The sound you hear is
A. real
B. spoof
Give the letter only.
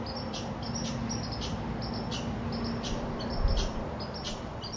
A